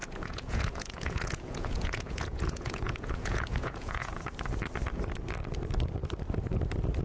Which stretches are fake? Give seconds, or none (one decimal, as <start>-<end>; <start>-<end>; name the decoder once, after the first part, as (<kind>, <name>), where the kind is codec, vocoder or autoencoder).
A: 0.0-4.2 (vocoder, Vocos)